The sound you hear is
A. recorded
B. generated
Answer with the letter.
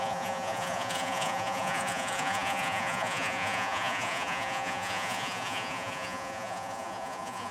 B